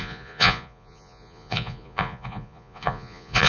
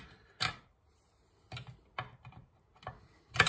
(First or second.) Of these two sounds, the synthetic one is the first